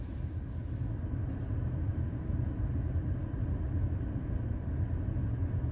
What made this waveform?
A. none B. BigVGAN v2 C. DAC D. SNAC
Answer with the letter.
A